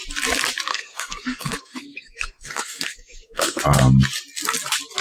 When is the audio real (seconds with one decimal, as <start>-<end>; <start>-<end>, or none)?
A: 0.0-0.7; 3.6-5.0